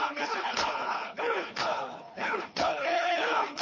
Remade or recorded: remade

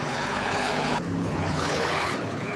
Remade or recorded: remade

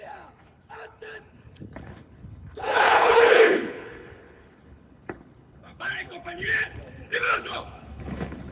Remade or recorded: remade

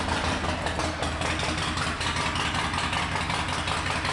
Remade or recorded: recorded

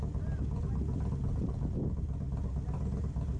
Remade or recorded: recorded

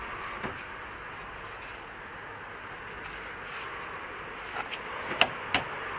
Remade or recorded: recorded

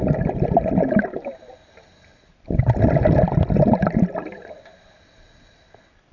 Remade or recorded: recorded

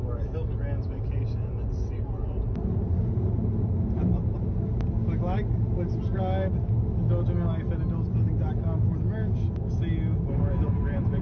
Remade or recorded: recorded